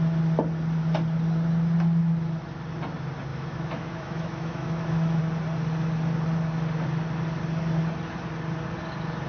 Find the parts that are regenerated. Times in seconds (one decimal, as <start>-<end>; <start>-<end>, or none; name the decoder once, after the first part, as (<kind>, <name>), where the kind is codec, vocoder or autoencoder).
3.3-5.2 (autoencoder, DAC-VAE)